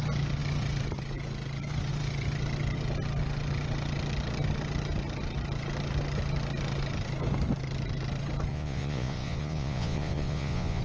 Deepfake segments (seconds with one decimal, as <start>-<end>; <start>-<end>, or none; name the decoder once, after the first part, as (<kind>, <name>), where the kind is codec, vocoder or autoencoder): 8.5-10.8 (vocoder, Vocos)